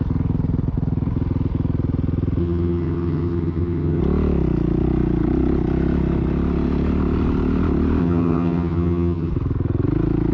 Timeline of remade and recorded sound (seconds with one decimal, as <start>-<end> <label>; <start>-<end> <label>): 0.0-2.4 recorded; 2.4-4.0 remade; 4.0-8.0 recorded; 8.0-9.3 remade; 9.3-10.3 recorded